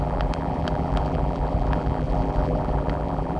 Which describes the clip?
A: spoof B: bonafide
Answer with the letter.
A